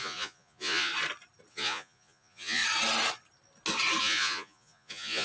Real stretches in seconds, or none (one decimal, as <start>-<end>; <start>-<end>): 0.9-1.5; 2.6-4.0